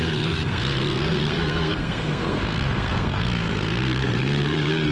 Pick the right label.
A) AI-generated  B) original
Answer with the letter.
A